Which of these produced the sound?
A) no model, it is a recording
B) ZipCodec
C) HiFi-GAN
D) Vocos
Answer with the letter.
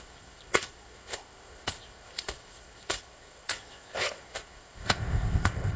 B